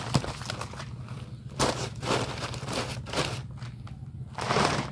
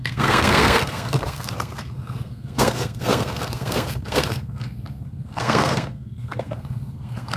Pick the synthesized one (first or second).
second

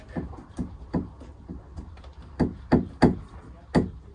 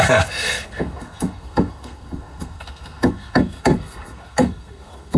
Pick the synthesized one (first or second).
second